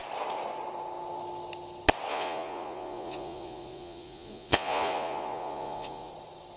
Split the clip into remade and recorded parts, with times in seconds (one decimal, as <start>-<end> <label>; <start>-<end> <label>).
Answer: 0.0-2.1 recorded; 2.1-6.1 remade; 6.1-6.6 recorded